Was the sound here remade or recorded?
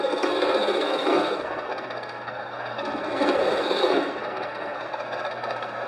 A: remade